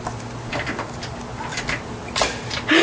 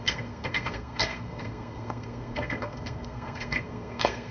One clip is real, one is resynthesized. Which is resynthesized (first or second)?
second